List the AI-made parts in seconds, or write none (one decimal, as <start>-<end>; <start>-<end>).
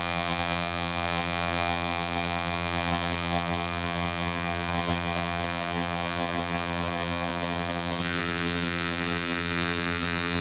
0.0-10.4